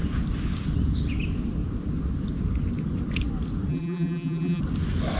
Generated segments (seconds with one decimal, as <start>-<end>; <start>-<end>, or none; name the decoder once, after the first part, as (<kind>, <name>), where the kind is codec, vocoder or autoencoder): 3.7-4.6 (vocoder, BigVGAN v2)